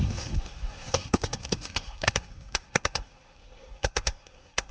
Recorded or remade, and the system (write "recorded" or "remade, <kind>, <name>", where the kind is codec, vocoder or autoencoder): remade, codec, SNAC